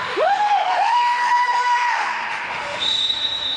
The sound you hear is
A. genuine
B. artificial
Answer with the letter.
B